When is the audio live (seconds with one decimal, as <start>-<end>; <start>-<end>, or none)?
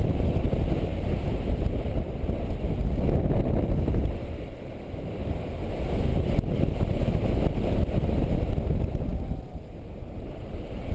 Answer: 0.0-10.9